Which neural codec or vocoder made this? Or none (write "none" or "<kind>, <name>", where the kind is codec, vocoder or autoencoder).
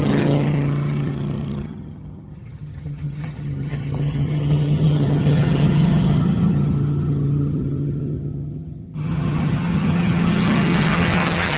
vocoder, HiFi-GAN